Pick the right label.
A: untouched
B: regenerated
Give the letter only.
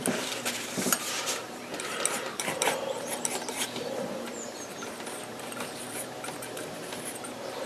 B